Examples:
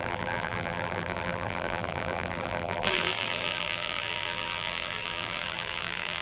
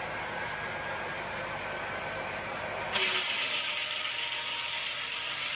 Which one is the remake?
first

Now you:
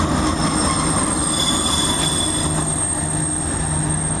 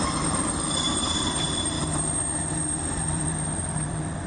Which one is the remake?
second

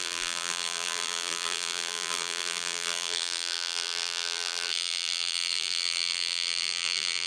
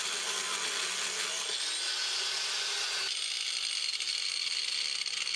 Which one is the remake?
first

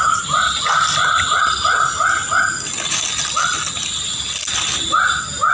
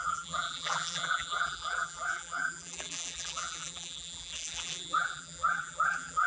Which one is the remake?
second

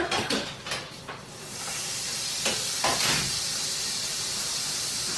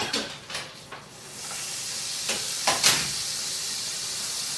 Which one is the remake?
first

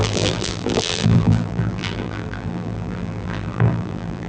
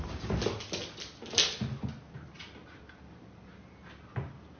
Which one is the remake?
first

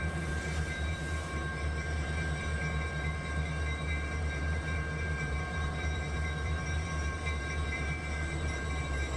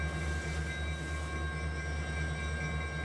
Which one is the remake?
first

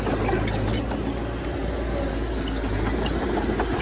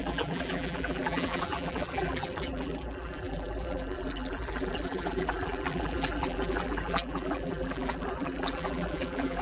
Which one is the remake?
second